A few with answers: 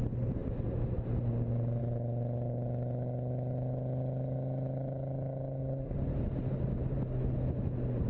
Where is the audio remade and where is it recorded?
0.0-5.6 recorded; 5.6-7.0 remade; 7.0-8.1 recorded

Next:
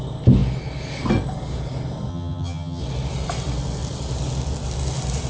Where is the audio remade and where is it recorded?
0.0-2.1 recorded; 2.1-2.8 remade; 2.8-5.3 recorded

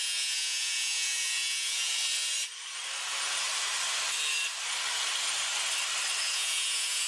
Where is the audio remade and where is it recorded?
0.0-1.9 remade; 1.9-6.2 recorded; 6.2-7.1 remade